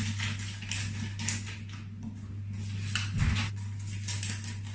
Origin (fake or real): real